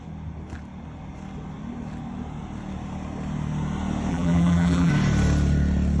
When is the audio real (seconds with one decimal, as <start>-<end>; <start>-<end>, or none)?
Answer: 0.0-4.1; 4.9-6.0